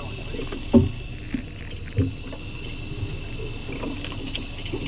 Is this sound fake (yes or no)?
no